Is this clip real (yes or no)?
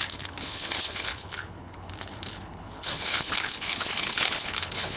no